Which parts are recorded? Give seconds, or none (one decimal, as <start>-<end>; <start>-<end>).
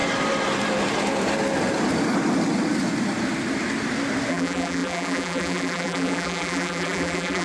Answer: 0.0-4.3